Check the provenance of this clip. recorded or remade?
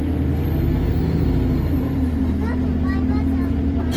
recorded